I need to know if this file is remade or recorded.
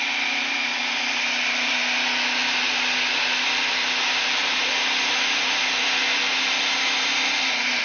recorded